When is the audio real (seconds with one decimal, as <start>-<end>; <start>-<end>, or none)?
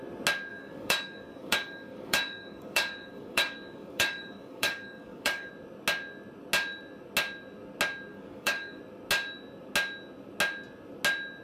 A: 0.0-0.5; 5.5-8.1; 8.8-11.4